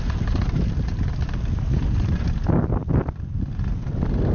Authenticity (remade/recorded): recorded